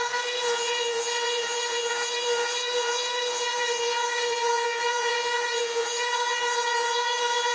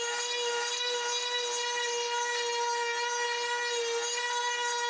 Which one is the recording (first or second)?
second